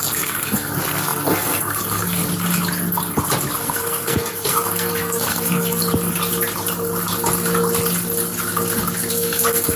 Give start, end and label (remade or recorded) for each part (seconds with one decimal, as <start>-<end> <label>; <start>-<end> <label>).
0.0-2.2 remade; 2.2-3.5 recorded; 3.5-5.8 remade; 5.8-9.1 recorded; 9.1-9.8 remade